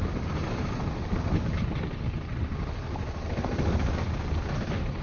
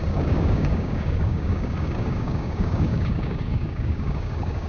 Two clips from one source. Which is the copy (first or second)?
second